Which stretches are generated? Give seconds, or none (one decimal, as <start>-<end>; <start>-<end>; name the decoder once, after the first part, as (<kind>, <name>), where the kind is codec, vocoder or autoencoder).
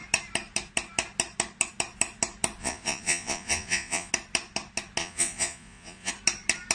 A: 2.6-4.1 (vocoder, Vocos); 5.0-6.1